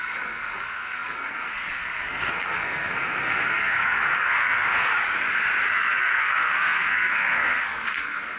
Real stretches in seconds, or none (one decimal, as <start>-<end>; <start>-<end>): 4.9-5.6